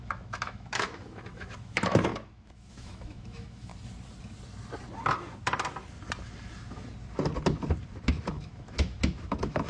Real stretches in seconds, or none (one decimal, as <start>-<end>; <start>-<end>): 3.7-8.3